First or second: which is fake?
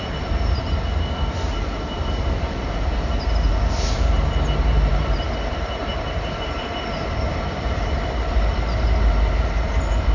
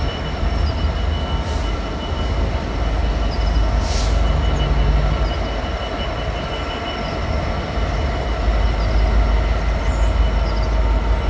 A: first